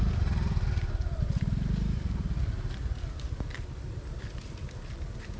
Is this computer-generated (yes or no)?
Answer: no